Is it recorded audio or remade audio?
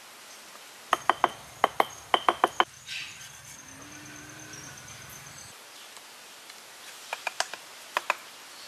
recorded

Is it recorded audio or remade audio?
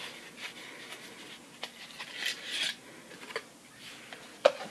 recorded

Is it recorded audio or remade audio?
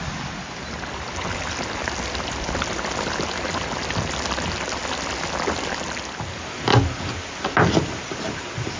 recorded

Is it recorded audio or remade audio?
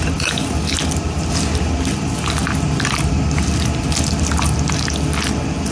recorded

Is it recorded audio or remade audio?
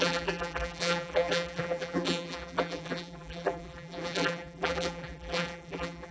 remade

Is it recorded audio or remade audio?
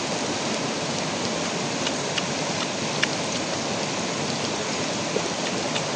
recorded